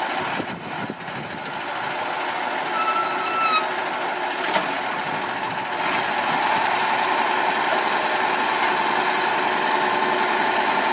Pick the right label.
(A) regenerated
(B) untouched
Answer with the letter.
B